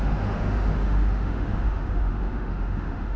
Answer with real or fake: fake